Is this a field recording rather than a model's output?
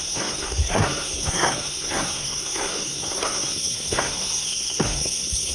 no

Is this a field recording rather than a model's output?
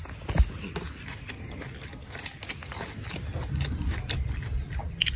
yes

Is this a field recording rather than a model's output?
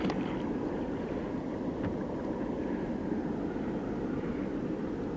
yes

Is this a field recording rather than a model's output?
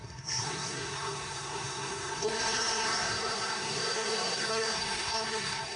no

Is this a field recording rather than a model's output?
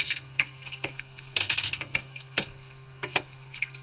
no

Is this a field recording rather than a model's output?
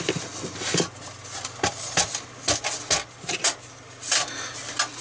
yes